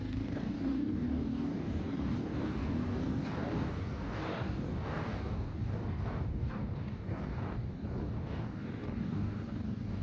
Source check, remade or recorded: remade